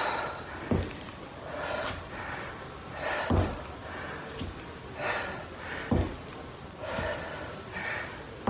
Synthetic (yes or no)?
no